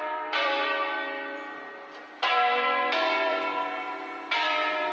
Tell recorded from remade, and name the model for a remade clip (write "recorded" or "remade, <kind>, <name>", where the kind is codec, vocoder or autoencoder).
remade, vocoder, BigVGAN v2